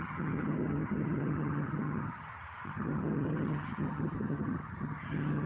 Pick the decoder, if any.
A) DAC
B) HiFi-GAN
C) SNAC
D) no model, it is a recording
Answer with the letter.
B